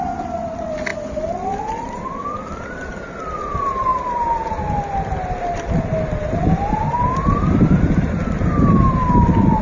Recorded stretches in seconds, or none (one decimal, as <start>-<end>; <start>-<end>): 0.0-9.6